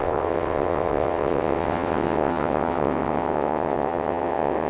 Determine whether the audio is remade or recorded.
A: remade